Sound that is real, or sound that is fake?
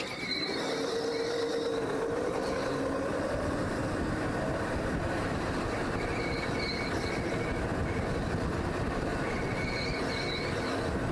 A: real